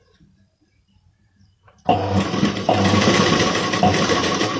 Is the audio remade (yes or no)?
yes